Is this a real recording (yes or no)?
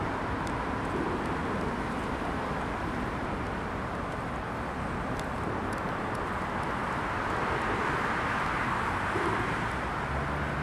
yes